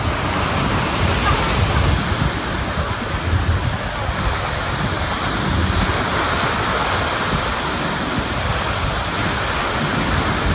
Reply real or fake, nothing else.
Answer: real